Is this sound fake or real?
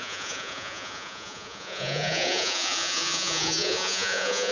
fake